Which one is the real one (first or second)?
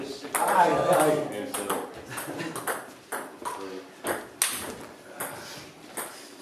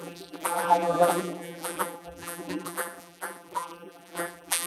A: first